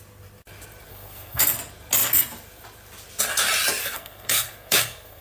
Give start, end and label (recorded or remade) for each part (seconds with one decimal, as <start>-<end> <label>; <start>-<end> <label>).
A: 0.0-0.9 recorded; 0.9-1.4 remade; 1.4-3.8 recorded; 3.8-5.2 remade